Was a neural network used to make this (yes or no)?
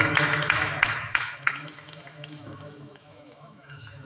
yes